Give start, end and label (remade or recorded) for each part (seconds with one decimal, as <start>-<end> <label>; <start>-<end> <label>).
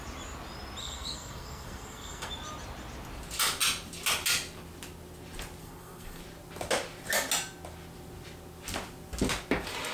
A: 0.0-0.8 recorded; 0.8-2.3 remade; 2.3-5.6 recorded; 5.6-6.2 remade; 6.2-9.9 recorded